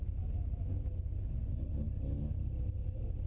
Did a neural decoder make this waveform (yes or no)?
no